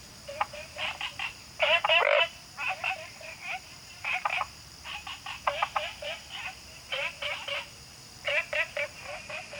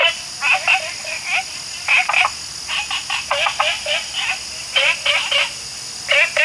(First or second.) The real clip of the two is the second